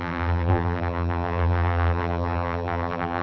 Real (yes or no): no